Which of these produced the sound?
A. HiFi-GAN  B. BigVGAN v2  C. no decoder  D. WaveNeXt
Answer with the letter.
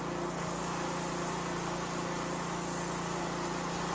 C